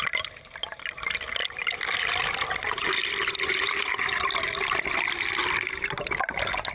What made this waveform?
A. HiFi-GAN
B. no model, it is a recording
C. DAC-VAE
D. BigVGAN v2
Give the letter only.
B